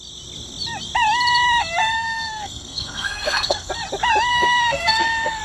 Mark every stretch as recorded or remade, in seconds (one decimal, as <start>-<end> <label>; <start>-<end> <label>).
0.0-1.8 recorded; 1.8-3.7 remade; 3.7-4.3 recorded; 4.3-5.4 remade